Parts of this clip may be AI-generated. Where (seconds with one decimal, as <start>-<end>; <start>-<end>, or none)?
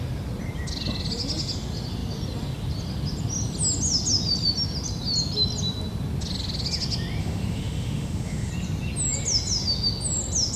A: 7.2-8.5